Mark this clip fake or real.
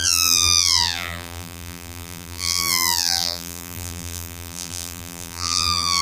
fake